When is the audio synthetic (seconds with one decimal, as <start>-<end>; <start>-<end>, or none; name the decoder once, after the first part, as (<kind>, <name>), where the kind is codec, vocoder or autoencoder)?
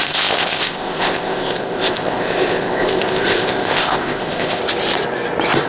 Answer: 0.0-4.6 (codec, ZipCodec)